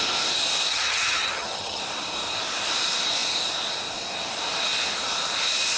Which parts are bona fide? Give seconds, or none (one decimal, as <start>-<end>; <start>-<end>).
0.0-0.7; 1.8-5.8